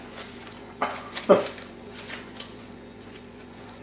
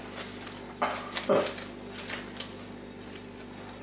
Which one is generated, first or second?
first